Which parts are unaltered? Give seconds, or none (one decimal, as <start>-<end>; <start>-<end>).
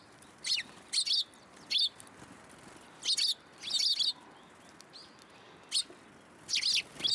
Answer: 0.0-7.1